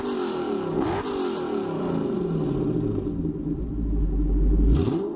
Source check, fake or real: real